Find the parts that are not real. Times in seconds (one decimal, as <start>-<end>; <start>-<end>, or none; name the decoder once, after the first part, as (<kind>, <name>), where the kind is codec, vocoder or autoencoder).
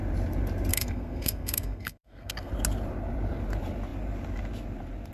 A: 0.7-2.5 (codec, SNAC)